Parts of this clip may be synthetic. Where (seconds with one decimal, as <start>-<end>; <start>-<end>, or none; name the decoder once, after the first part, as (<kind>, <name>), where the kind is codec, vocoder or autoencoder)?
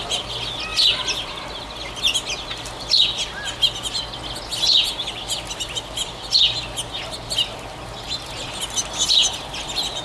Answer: none